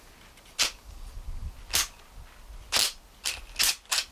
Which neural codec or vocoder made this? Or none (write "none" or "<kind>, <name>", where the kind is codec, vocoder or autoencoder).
none